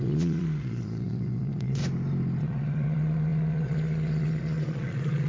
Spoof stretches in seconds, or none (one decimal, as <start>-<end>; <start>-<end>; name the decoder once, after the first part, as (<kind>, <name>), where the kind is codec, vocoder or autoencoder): 0.0-1.8 (vocoder, Vocos); 2.4-5.3